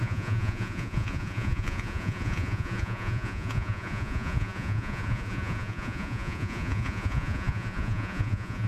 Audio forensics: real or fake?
fake